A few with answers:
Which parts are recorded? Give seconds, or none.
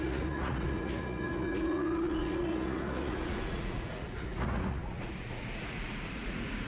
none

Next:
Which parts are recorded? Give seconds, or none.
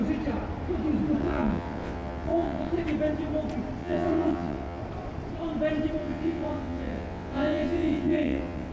0.0-1.2; 2.7-3.8; 4.8-6.0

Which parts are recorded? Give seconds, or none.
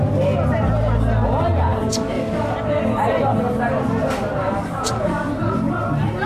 0.0-1.7; 2.5-4.4; 5.3-6.3